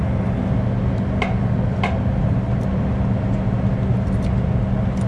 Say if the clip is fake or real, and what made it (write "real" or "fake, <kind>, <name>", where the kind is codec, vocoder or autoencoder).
real